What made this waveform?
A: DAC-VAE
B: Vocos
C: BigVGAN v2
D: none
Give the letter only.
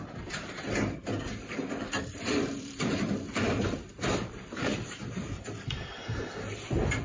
C